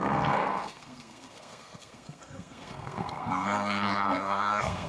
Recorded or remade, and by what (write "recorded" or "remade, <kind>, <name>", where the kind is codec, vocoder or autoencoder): remade, codec, SNAC